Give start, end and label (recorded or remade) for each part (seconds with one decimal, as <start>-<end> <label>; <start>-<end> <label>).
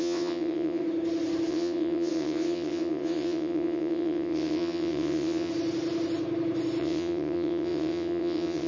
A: 0.0-0.8 remade; 0.8-1.5 recorded; 1.5-5.5 remade; 5.5-6.8 recorded; 6.8-8.7 remade